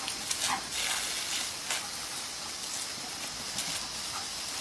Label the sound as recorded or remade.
recorded